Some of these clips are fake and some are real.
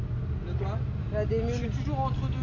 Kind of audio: real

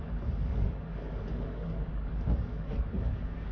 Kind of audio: fake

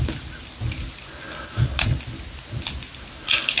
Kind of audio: real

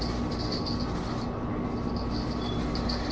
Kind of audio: real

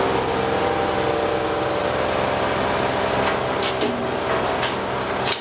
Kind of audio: real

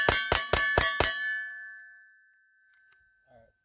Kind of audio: real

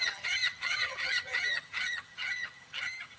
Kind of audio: fake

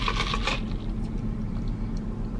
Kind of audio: real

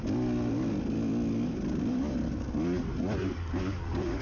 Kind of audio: real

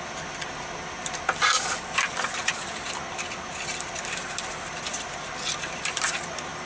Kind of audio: fake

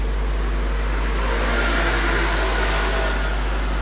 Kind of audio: real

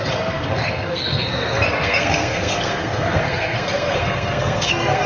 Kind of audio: fake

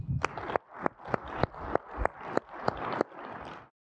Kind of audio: real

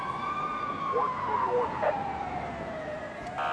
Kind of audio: real